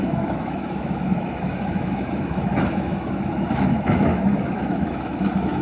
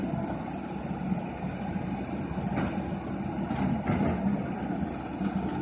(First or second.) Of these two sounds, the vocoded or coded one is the first